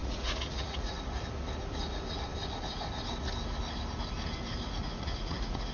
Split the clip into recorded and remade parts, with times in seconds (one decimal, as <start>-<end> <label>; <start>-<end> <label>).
0.0-0.9 remade; 0.9-4.8 recorded; 4.8-5.7 remade